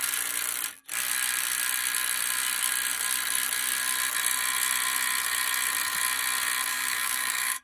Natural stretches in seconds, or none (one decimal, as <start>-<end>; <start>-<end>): 0.0-6.7